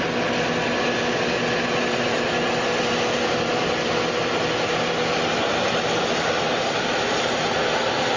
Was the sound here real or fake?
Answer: real